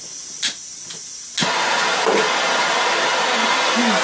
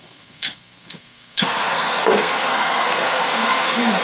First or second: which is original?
first